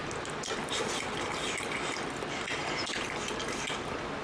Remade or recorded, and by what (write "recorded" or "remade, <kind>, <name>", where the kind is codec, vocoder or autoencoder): recorded